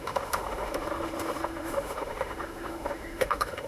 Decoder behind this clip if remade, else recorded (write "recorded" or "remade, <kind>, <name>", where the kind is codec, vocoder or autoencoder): remade, autoencoder, DAC-VAE